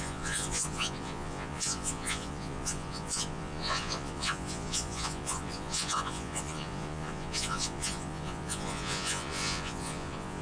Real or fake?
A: fake